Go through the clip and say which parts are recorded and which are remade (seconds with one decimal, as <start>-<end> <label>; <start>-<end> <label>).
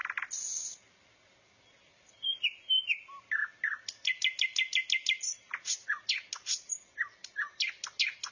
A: 0.0-8.3 recorded